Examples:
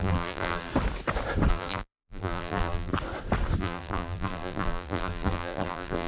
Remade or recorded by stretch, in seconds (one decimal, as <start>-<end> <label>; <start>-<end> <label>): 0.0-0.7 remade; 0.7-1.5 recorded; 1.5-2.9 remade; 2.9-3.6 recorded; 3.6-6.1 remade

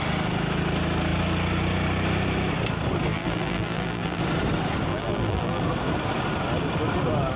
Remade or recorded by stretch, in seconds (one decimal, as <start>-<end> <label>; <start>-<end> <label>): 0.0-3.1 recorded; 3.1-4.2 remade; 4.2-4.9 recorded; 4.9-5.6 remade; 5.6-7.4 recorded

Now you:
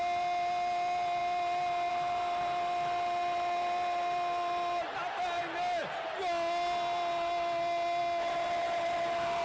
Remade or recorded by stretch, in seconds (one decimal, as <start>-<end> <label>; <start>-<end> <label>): 0.0-9.4 recorded

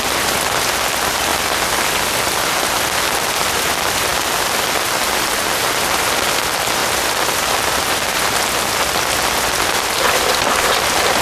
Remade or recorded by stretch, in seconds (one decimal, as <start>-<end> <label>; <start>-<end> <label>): 0.0-1.3 recorded; 1.3-2.4 remade; 2.4-6.8 recorded; 6.8-8.4 remade; 8.4-11.2 recorded

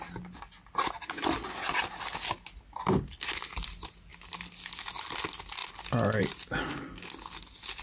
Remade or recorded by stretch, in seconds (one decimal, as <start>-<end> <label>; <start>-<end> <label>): 0.0-7.8 recorded

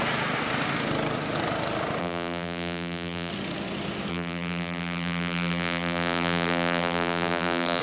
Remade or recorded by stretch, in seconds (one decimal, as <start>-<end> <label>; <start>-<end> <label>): 0.0-2.0 recorded; 2.0-3.3 remade; 3.3-4.1 recorded; 4.1-7.8 remade

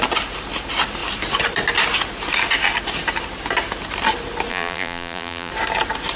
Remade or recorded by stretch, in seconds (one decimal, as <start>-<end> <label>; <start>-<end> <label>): 0.0-4.5 recorded; 4.5-5.5 remade; 5.5-6.2 recorded